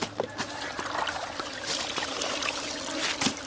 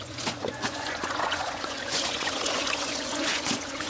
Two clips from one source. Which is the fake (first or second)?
second